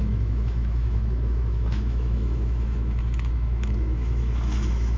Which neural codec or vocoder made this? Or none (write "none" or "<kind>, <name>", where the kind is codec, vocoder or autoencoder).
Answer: autoencoder, DAC-VAE